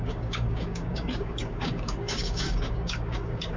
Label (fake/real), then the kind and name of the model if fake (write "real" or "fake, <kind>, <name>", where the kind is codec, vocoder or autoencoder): fake, codec, DAC